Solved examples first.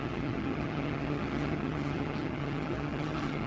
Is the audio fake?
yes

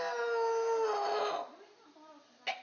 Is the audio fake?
no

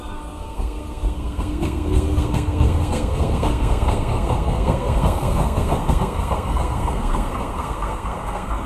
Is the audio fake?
yes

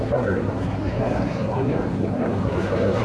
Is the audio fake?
yes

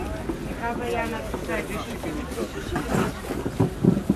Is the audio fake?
no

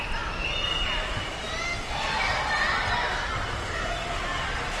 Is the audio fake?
no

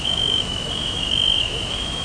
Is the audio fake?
yes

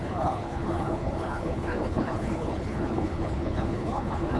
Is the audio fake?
yes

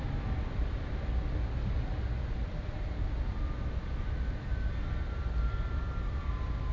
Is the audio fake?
no